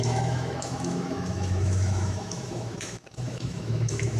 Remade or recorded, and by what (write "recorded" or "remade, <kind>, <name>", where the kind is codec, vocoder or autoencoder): remade, autoencoder, DAC-VAE